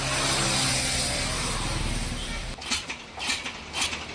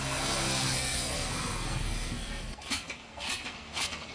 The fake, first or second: second